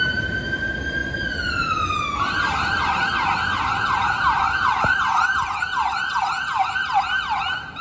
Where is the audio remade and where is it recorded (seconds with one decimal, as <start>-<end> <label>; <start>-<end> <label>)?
0.0-7.8 recorded